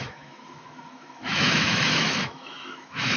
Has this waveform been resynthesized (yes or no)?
yes